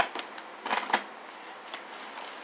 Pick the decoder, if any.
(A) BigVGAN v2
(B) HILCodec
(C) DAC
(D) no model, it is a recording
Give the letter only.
D